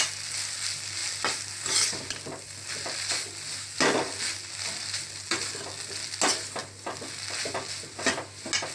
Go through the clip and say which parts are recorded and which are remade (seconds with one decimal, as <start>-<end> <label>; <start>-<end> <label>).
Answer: 0.0-8.7 recorded